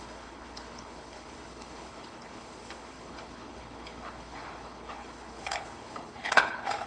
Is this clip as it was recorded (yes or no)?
no